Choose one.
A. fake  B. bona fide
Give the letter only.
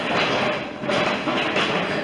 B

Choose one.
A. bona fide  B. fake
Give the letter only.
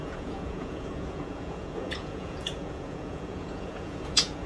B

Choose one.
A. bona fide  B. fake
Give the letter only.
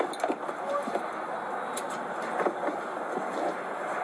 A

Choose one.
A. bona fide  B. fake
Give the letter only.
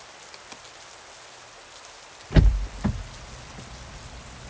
A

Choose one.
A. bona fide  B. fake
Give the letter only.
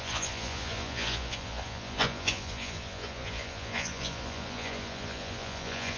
B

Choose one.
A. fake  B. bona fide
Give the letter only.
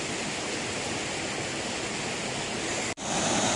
B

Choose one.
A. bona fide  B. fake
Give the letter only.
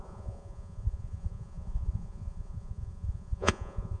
B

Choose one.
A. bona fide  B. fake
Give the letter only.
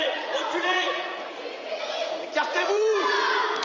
B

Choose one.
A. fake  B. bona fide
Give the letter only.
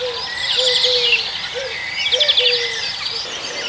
B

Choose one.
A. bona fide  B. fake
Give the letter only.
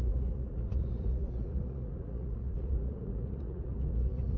B